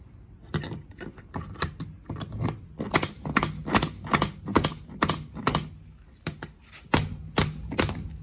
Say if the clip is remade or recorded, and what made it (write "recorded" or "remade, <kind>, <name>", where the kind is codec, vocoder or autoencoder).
recorded